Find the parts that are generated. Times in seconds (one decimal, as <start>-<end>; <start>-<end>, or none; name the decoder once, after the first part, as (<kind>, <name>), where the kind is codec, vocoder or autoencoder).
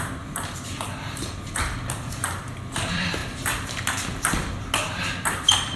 0.0-3.2 (vocoder, BigVGAN v2)